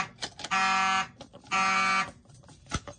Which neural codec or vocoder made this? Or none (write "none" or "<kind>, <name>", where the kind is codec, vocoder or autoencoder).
none